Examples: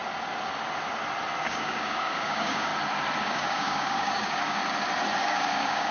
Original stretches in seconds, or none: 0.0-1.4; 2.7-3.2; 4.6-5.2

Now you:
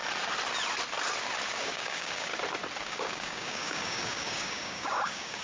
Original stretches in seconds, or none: 0.0-1.5; 2.3-2.8

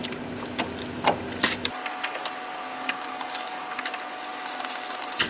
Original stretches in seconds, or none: 0.0-2.7; 3.8-5.3

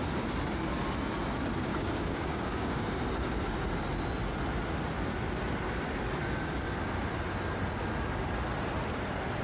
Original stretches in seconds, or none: 0.0-1.7; 3.0-9.4

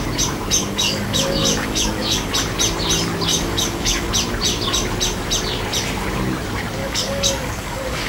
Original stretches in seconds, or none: 0.0-0.6; 2.3-3.3; 4.1-6.8

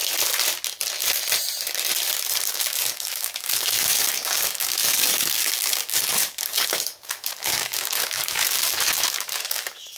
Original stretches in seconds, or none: 0.0-2.5